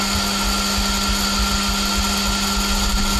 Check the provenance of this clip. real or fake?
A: real